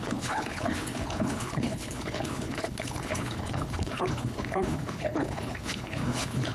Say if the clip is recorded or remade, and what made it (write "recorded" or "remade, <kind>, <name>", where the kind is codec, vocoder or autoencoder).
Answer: remade, codec, HILCodec